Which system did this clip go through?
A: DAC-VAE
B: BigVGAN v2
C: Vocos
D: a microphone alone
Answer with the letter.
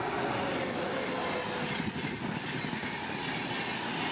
D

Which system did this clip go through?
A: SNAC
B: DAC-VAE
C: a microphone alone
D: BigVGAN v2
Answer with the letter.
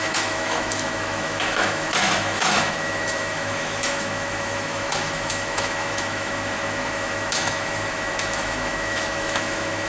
B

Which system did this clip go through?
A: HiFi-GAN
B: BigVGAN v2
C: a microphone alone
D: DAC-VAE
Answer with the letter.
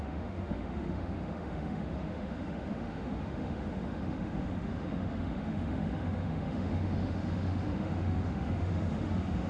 D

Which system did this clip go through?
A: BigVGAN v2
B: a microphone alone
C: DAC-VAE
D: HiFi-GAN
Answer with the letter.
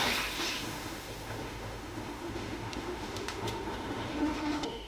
C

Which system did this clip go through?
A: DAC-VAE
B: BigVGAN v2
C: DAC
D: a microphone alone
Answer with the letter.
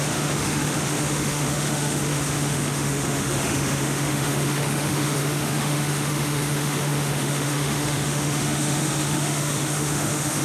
A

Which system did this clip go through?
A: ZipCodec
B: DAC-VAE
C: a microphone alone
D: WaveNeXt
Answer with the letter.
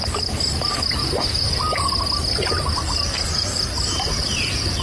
C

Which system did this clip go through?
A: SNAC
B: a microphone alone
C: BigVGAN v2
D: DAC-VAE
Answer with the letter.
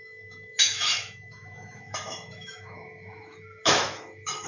D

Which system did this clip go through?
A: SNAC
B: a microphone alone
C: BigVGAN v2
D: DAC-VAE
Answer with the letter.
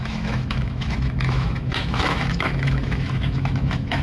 D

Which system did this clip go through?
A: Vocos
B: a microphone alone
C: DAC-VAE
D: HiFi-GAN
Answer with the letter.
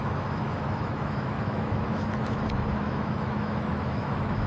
C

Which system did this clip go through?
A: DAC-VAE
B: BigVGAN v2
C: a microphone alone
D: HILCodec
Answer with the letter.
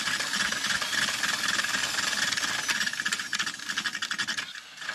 C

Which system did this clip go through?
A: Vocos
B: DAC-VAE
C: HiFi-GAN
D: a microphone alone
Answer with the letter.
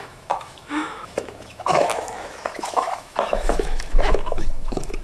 B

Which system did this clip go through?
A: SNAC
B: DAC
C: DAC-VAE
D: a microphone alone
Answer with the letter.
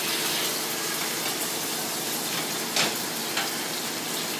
D